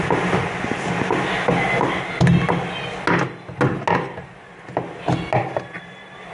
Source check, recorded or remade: recorded